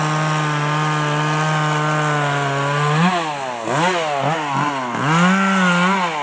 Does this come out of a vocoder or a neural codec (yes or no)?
no